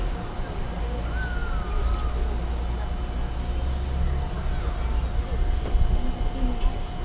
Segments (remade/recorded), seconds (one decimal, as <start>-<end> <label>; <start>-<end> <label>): 0.0-7.0 recorded